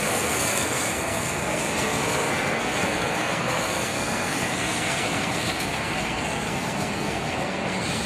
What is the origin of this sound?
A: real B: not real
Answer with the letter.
B